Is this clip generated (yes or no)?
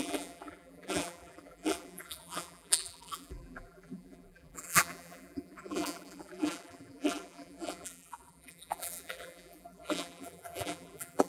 yes